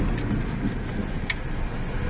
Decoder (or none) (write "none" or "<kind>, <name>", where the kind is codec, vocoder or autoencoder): none